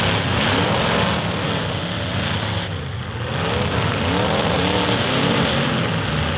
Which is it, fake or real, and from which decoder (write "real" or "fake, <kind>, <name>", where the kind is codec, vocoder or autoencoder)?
real